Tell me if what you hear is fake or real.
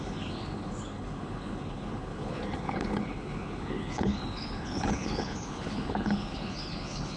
fake